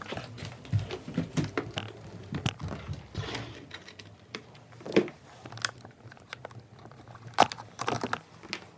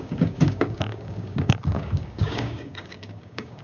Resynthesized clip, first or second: second